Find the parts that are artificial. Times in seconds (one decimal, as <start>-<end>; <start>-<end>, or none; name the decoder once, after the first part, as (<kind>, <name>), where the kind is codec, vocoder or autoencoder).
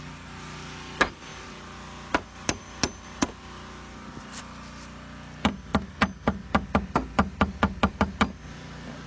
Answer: none